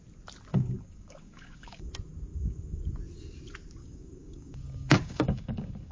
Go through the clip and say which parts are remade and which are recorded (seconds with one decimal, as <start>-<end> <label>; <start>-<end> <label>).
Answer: 0.0-0.5 recorded; 0.5-1.9 remade; 1.9-2.3 recorded; 2.3-2.8 remade; 2.8-3.8 recorded; 3.8-5.9 remade